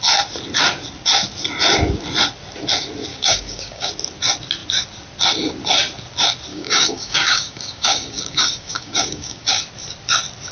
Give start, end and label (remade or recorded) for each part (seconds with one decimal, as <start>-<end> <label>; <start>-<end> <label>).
0.0-3.1 recorded; 3.1-3.9 remade; 3.9-6.5 recorded; 6.5-9.6 remade; 9.6-10.5 recorded